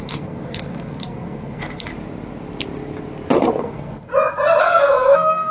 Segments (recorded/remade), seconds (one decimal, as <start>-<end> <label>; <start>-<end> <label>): 0.0-1.9 remade; 1.9-3.6 recorded; 3.6-4.1 remade; 4.1-4.6 recorded; 4.6-5.5 remade